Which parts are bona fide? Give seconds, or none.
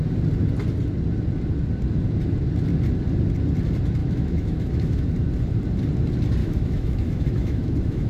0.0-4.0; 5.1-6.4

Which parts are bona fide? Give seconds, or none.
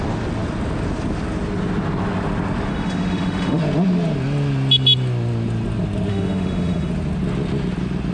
0.0-2.7; 3.6-6.1; 6.9-8.1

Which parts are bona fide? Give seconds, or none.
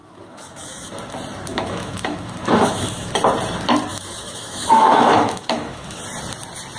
0.9-1.5; 3.1-3.9; 6.0-6.8